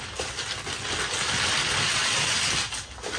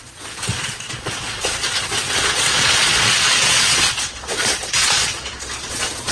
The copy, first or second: second